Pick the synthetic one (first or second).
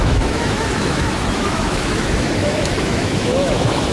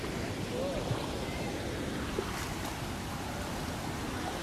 first